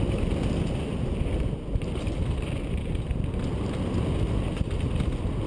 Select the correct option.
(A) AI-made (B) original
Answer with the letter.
B